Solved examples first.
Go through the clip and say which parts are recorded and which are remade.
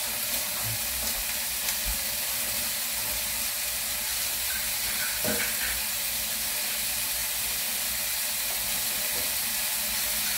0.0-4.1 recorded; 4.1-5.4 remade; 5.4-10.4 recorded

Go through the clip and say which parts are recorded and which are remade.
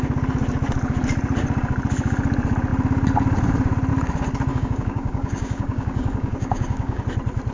0.0-4.5 recorded; 4.5-7.0 remade; 7.0-7.5 recorded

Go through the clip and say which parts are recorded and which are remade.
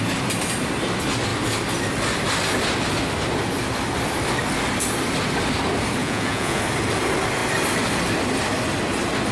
0.0-6.0 recorded; 6.0-6.6 remade; 6.6-9.3 recorded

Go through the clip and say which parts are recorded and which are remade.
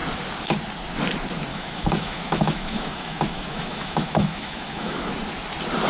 0.0-1.5 recorded; 1.5-5.0 remade; 5.0-5.9 recorded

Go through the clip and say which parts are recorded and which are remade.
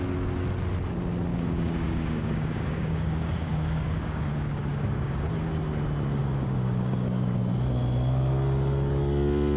0.0-1.3 recorded; 1.3-5.2 remade; 5.2-6.2 recorded; 6.2-7.4 remade; 7.4-9.6 recorded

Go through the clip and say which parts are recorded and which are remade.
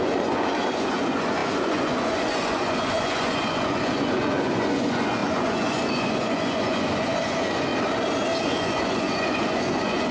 0.0-7.7 remade; 7.7-8.4 recorded; 8.4-10.1 remade